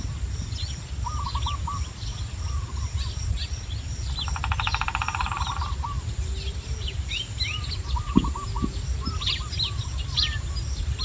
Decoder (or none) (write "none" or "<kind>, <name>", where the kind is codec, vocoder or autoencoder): none